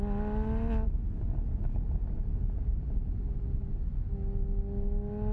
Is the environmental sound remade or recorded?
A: recorded